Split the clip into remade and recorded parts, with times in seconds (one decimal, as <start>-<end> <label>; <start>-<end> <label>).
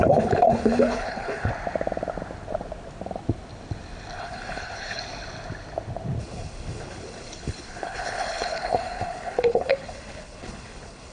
0.0-1.5 remade; 1.5-4.2 recorded; 4.2-5.0 remade; 5.0-6.2 recorded; 6.2-11.1 remade